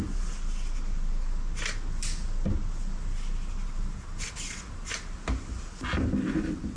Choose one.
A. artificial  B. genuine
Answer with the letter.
B